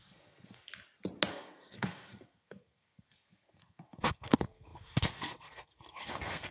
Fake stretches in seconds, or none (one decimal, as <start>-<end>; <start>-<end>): 0.0-0.7; 1.3-6.5